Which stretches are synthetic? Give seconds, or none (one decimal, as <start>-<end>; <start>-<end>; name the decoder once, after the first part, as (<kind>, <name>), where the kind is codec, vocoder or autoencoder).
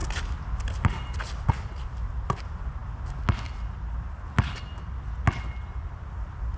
none